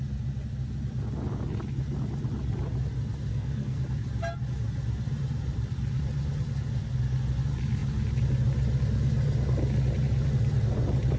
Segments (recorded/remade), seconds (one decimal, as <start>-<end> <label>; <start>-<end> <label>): 0.0-3.3 recorded; 3.3-3.8 remade; 3.8-11.2 recorded